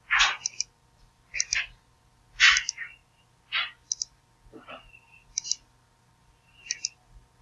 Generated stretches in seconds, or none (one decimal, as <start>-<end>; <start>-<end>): none